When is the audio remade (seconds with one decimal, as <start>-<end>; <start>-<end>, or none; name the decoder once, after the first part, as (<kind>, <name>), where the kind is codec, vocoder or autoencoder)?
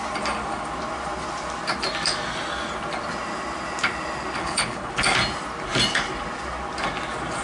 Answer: 4.4-4.9 (codec, HILCodec)